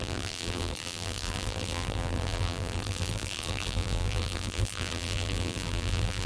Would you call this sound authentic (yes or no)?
no